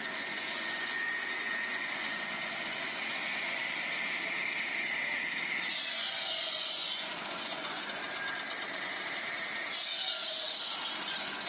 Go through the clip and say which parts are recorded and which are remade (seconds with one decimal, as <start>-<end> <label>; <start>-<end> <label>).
0.0-3.6 remade; 3.6-5.8 recorded; 5.8-8.0 remade; 8.0-11.1 recorded; 11.1-11.5 remade